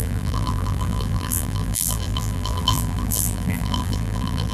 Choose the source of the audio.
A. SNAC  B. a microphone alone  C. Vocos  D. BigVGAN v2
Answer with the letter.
D